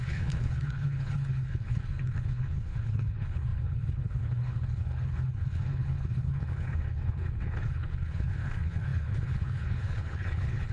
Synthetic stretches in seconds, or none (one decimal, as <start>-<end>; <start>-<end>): 0.0-10.7